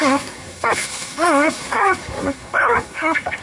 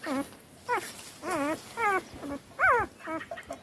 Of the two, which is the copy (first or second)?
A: first